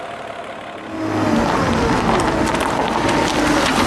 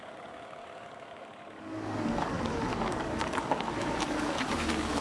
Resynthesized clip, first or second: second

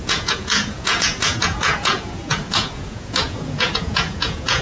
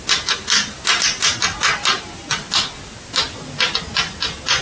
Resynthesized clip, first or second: first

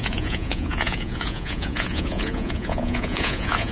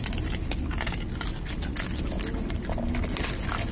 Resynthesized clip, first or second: first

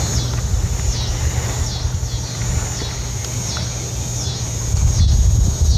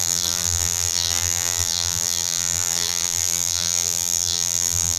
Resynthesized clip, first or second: second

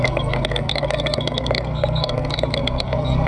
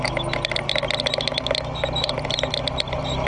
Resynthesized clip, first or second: first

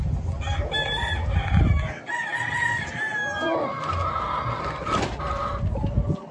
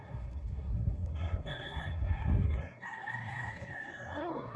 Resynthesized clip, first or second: second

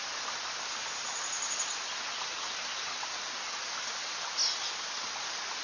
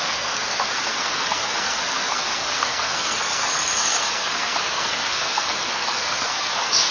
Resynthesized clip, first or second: second